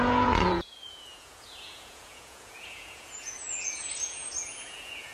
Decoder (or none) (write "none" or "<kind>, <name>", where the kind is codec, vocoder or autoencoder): vocoder, Vocos